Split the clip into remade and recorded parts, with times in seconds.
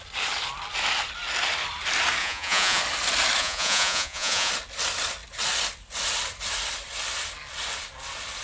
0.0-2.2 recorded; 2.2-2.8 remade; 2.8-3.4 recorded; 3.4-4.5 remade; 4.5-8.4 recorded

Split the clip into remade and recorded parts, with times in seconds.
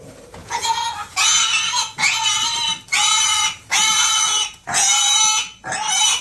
0.0-0.4 recorded; 0.4-2.4 remade; 2.4-2.9 recorded; 2.9-5.7 remade; 5.7-6.2 recorded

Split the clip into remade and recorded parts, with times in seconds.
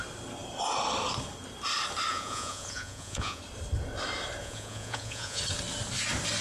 0.0-2.1 recorded; 2.1-3.4 remade; 3.4-4.4 recorded; 4.4-5.4 remade; 5.4-6.4 recorded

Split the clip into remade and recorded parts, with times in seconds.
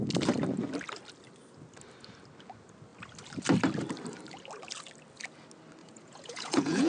0.0-5.8 recorded; 5.8-6.9 remade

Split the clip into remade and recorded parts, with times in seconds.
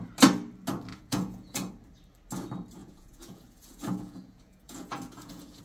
0.0-0.9 recorded; 0.9-1.7 remade; 1.7-2.8 recorded; 2.8-5.6 remade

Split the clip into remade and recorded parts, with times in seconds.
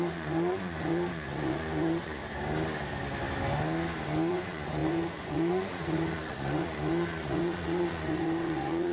0.0-2.2 remade; 2.2-4.3 recorded; 4.3-8.9 remade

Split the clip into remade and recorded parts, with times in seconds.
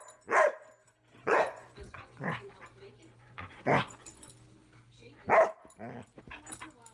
0.0-1.2 recorded; 1.2-2.5 remade; 2.5-3.2 recorded; 3.2-4.3 remade; 4.3-6.9 recorded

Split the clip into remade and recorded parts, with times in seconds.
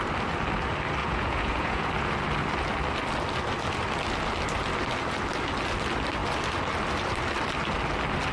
0.0-1.0 recorded; 1.0-1.9 remade; 1.9-8.3 recorded